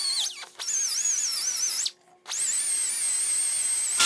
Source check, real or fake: real